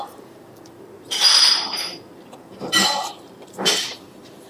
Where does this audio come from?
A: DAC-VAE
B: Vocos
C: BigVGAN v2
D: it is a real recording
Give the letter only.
C